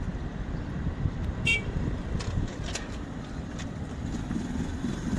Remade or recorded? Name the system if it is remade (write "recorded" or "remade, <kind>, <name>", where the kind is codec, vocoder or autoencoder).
remade, vocoder, BigVGAN v2